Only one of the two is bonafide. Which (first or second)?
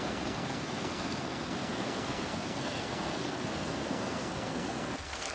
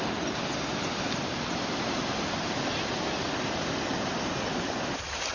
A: second